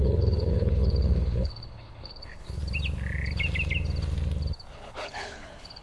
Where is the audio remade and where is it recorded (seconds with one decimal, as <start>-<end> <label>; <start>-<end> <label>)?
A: 0.0-2.6 remade; 2.6-4.7 recorded; 4.7-5.8 remade